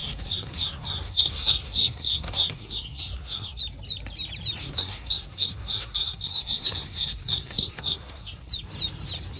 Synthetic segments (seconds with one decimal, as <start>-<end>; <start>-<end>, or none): 0.0-3.6; 4.6-8.5